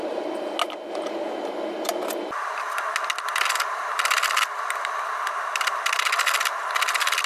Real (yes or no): yes